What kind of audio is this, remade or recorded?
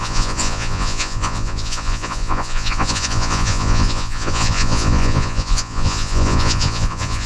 remade